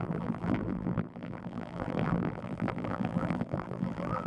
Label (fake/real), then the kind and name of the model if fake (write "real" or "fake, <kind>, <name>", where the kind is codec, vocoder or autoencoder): fake, vocoder, BigVGAN v2